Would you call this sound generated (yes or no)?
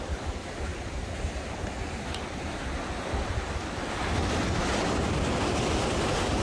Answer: no